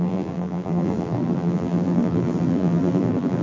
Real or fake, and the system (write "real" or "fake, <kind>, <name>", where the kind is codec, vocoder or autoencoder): fake, vocoder, BigVGAN v2